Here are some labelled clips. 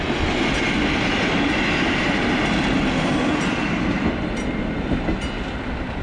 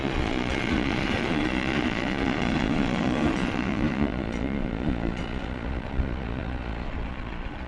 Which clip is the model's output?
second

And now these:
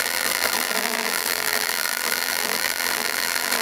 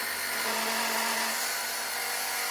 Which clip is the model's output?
first